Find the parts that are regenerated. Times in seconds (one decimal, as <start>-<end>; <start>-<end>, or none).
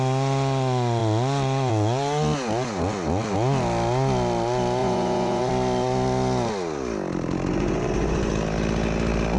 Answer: 4.8-5.5; 7.5-8.3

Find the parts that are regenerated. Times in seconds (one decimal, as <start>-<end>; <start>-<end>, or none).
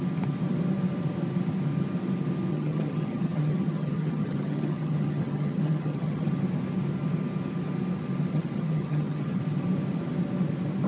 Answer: 2.5-6.3; 8.3-9.4